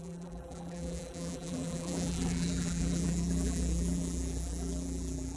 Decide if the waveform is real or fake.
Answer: fake